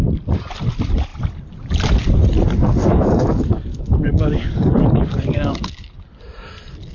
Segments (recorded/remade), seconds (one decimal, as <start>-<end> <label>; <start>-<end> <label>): 0.0-2.8 recorded; 2.8-5.7 remade; 5.7-6.9 recorded